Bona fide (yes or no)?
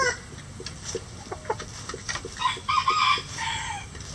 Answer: yes